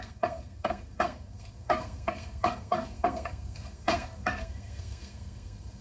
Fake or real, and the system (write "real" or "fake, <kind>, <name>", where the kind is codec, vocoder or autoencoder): fake, codec, SNAC